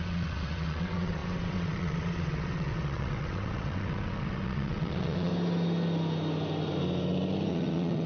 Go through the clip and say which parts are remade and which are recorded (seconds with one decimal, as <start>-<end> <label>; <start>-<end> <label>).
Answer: 0.0-5.3 remade; 5.3-7.5 recorded; 7.5-8.1 remade